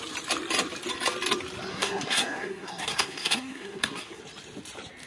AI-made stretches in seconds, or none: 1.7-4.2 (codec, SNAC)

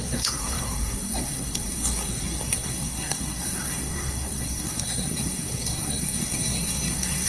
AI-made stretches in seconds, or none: 0.0-7.3 (codec, SNAC)

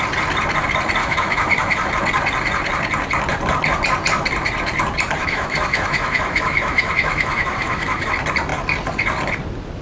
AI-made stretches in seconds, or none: 1.0-1.9 (autoencoder, DAC-VAE); 5.2-8.1

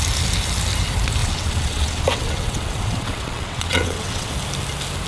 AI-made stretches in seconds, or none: 1.2-4.3 (vocoder, WaveNeXt)

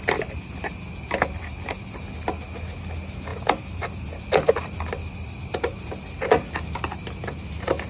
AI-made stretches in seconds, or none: 3.3-5.4 (vocoder, BigVGAN v2)

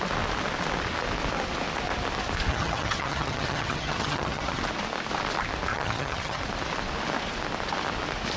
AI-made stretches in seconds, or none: 2.5-4.6 (vocoder, HiFi-GAN); 5.7-6.4

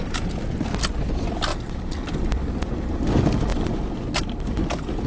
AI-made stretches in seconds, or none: 1.5-2.9 (vocoder, BigVGAN v2)

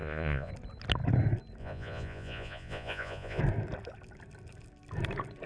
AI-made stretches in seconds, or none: 0.0-0.5 (vocoder, Vocos); 1.6-3.4